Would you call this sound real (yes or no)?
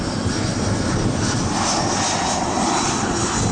yes